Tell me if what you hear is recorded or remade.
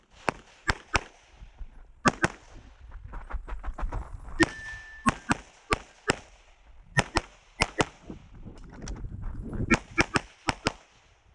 recorded